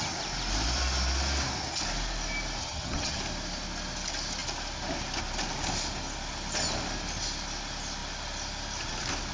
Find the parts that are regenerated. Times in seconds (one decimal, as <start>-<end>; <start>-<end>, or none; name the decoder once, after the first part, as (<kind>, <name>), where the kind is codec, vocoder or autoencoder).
2.6-3.2 (vocoder, HiFi-GAN)